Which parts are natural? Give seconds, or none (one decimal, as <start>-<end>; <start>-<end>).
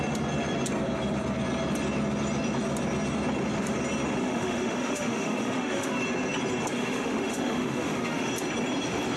0.0-4.2; 6.0-6.8; 8.3-9.2